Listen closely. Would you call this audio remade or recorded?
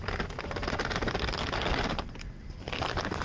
recorded